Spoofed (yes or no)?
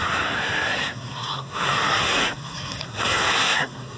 yes